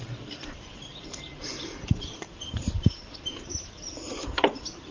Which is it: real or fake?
fake